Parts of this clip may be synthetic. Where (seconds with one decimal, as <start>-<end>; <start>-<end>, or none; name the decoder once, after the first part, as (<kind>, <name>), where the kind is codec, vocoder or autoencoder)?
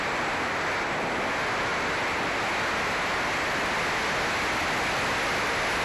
none